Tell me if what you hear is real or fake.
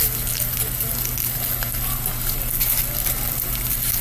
real